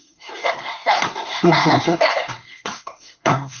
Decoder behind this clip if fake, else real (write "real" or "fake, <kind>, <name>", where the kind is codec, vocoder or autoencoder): fake, codec, SNAC